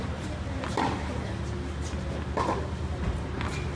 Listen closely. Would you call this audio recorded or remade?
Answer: recorded